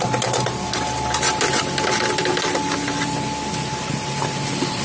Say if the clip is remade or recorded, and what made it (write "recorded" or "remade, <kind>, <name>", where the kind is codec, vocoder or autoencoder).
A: recorded